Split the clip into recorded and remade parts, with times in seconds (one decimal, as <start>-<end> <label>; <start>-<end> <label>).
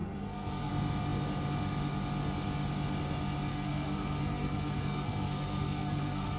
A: 0.0-0.7 remade; 0.7-3.5 recorded; 3.5-6.4 remade